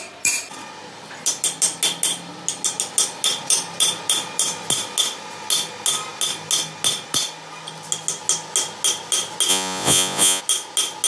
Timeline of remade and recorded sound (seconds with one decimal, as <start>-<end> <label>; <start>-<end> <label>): 0.0-9.5 recorded; 9.5-10.4 remade; 10.4-11.1 recorded